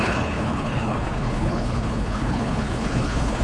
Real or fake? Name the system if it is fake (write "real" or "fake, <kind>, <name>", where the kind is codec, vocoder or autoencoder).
fake, codec, HILCodec